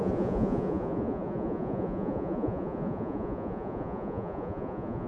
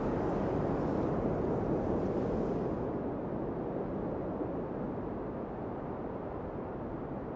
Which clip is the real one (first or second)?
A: second